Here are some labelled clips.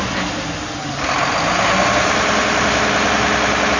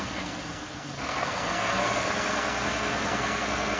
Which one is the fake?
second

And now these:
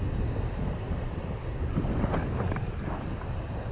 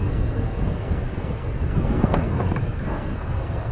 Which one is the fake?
second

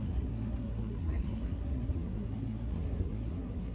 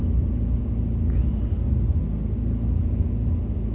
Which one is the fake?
first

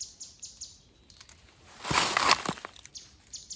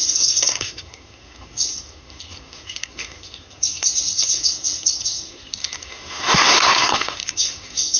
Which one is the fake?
second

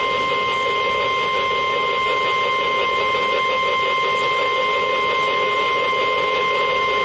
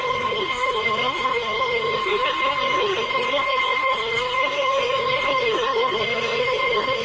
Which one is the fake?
second